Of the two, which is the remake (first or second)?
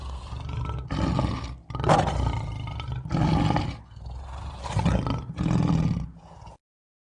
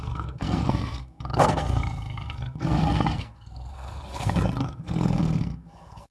second